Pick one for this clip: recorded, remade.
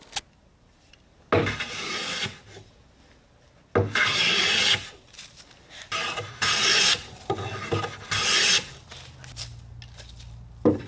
recorded